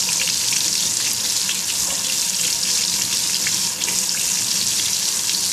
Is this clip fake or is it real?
real